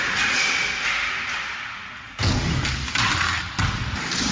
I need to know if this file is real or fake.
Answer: real